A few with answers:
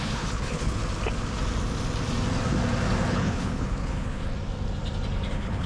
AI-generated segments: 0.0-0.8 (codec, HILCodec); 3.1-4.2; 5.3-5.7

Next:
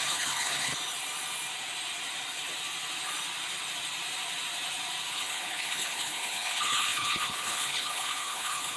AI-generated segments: 0.0-0.7 (codec, HILCodec); 5.1-8.8

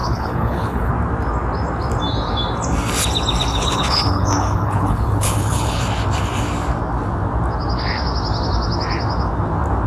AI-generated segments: 0.0-0.9 (codec, HILCodec); 3.5-5.8

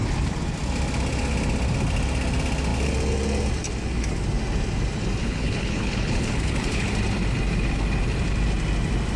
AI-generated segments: 5.2-6.9 (codec, HILCodec)